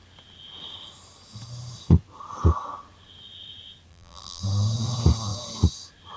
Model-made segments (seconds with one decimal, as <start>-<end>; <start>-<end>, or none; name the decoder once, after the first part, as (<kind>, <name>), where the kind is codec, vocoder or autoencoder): 3.9-4.4 (vocoder, BigVGAN v2)